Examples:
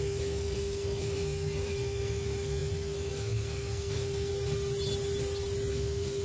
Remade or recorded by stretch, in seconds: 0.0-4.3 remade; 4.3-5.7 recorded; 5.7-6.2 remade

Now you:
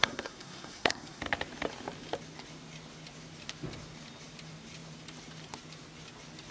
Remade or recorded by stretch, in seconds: 0.0-1.2 remade; 1.2-6.5 recorded

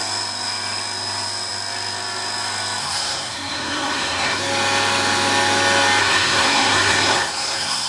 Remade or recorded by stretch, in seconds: 0.0-2.8 recorded; 2.8-4.4 remade; 4.4-6.0 recorded; 6.0-7.9 remade